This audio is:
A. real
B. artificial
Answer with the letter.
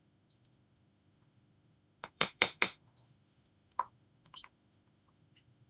B